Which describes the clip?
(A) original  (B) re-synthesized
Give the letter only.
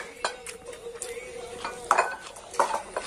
A